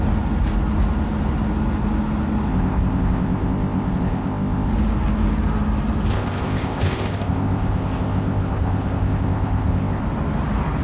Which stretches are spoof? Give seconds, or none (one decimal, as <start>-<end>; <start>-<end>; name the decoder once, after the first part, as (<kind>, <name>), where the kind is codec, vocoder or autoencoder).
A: 2.5-4.7 (codec, ZipCodec); 6.1-10.0